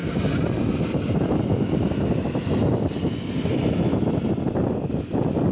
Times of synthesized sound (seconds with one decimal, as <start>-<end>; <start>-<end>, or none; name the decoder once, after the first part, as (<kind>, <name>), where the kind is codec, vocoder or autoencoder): none

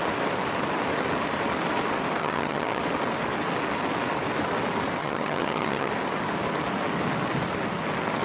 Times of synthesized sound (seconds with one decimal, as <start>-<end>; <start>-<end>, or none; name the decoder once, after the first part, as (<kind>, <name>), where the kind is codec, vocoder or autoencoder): 2.2-2.8 (vocoder, HiFi-GAN); 5.0-5.9

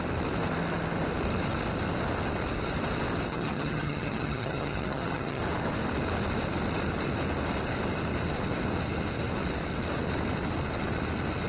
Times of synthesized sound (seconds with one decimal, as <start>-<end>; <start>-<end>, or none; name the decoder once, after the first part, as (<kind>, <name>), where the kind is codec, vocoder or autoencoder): 3.3-5.4 (vocoder, HiFi-GAN)

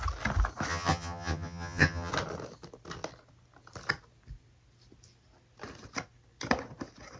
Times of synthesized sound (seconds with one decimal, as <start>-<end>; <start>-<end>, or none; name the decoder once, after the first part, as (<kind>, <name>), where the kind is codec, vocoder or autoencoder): 0.7-2.1 (vocoder, HiFi-GAN)

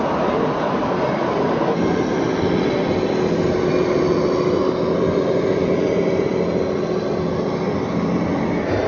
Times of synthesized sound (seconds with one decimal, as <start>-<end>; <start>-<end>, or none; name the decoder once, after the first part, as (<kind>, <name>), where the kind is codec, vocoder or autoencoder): none